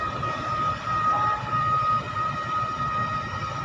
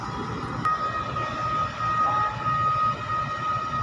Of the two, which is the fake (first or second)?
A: first